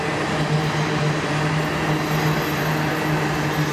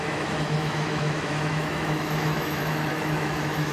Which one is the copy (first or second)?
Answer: second